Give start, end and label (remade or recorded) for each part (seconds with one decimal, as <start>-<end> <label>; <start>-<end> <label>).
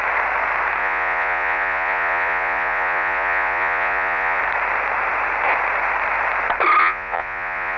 0.0-0.8 recorded; 0.8-4.4 remade; 4.4-6.8 recorded; 6.8-7.8 remade